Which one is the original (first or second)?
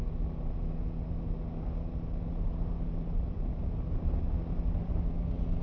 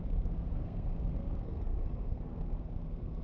first